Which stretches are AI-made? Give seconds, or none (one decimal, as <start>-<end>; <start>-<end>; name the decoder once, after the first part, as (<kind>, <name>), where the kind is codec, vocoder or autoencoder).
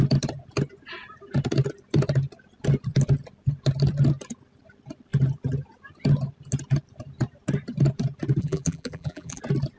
8.4-9.4 (vocoder, BigVGAN v2)